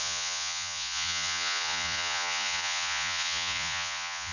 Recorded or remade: remade